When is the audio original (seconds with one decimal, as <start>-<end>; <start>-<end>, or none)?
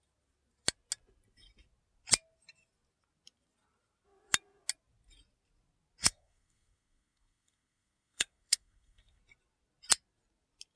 0.0-6.0; 9.2-10.8